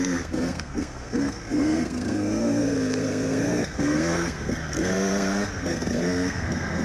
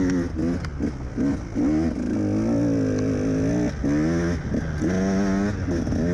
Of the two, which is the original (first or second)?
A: second